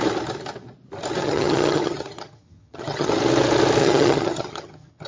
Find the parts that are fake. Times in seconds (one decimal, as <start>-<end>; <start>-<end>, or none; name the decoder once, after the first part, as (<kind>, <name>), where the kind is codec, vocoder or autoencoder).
1.2-3.1 (vocoder, HiFi-GAN); 3.8-5.1